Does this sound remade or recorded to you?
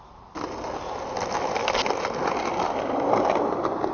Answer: recorded